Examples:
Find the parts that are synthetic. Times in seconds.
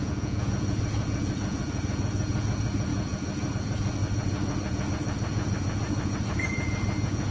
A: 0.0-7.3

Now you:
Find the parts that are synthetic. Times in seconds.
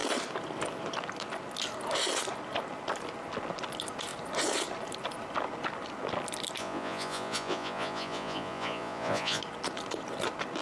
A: 6.6-9.4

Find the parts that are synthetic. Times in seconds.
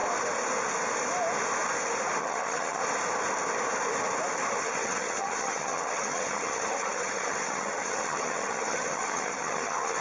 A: 2.2-2.8; 4.6-10.0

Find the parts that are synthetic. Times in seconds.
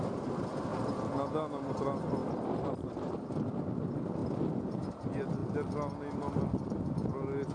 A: 0.0-0.7; 1.7-2.2; 2.7-4.2; 4.9-5.4; 6.5-7.5